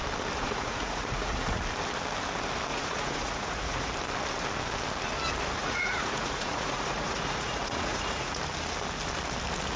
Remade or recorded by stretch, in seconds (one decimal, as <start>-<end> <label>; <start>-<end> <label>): 0.0-0.4 recorded; 0.4-1.6 remade; 1.6-2.7 recorded; 2.7-3.9 remade; 3.9-5.6 recorded; 5.6-8.4 remade; 8.4-9.8 recorded